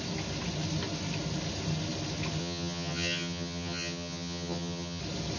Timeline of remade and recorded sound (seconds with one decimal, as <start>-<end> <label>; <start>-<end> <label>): 0.0-2.4 recorded; 2.4-5.0 remade; 5.0-5.4 recorded